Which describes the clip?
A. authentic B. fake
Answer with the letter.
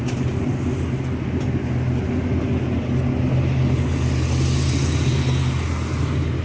A